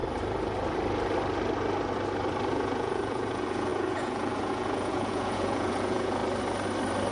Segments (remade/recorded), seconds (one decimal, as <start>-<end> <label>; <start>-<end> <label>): 0.0-2.5 recorded; 2.5-6.2 remade; 6.2-7.1 recorded